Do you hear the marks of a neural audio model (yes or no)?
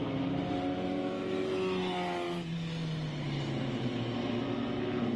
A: no